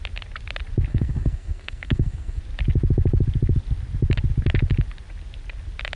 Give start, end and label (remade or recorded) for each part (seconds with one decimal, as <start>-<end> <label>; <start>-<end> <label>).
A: 0.0-0.9 recorded; 0.9-2.4 remade; 2.4-6.0 recorded